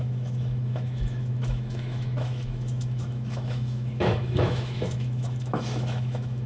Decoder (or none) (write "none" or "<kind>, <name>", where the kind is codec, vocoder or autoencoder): autoencoder, DAC-VAE